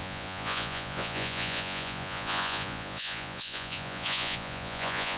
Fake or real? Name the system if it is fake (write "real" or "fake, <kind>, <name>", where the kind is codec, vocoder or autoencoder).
fake, vocoder, Vocos